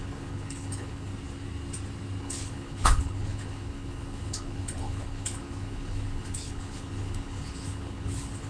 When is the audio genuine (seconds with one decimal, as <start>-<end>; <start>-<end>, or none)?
1.1-2.2